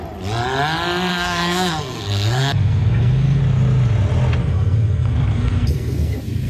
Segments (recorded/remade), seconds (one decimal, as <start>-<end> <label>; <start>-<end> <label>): 0.0-1.1 recorded; 1.1-3.4 remade; 3.4-4.4 recorded; 4.4-6.5 remade